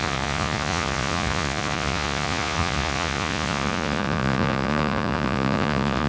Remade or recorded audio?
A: remade